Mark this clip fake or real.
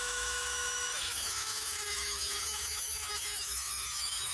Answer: fake